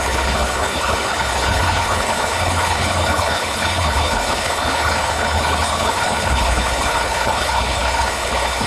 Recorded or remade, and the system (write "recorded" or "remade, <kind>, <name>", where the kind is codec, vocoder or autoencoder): remade, codec, HILCodec